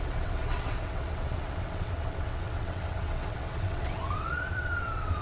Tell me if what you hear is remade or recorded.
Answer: remade